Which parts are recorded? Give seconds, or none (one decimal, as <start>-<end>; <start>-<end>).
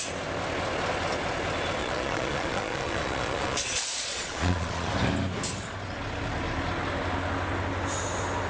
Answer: 0.0-1.8; 4.9-8.5